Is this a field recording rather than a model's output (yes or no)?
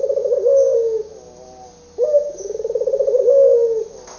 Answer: yes